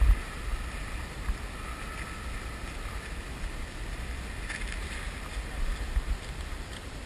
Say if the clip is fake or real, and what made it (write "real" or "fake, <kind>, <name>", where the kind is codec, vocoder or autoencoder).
real